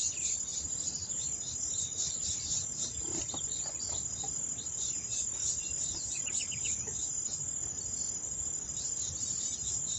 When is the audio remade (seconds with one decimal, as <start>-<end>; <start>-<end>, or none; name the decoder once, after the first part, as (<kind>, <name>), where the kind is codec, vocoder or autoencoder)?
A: none